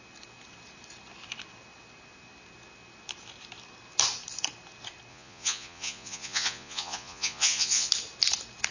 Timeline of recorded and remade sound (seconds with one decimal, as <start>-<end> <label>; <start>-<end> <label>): 0.0-5.1 recorded; 5.1-7.9 remade; 7.9-8.7 recorded